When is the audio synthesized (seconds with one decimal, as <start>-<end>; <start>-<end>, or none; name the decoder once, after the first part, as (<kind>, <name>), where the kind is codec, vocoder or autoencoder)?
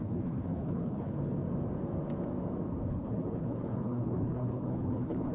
0.0-1.2 (codec, HILCodec); 2.9-5.3